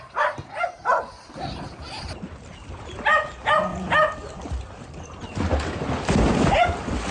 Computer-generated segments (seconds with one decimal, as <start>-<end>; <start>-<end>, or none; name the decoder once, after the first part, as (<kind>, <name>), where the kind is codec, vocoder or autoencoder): none

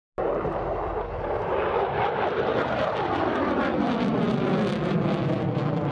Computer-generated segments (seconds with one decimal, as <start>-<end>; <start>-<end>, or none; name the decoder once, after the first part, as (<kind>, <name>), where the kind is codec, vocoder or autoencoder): none

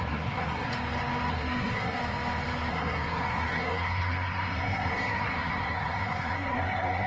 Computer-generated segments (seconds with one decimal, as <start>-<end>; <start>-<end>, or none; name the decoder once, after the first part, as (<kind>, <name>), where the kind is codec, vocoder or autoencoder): 0.0-0.7 (codec, SNAC); 1.3-2.0; 2.7-7.1

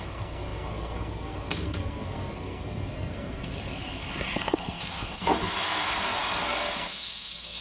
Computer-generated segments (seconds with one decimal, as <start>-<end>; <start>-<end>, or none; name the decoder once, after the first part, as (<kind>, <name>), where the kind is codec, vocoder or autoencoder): 0.0-7.6 (codec, SNAC)